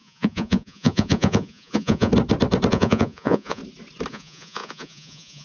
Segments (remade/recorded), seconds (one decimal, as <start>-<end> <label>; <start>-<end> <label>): 0.0-2.1 remade; 2.1-2.7 recorded; 2.7-3.6 remade; 3.6-4.1 recorded; 4.1-5.4 remade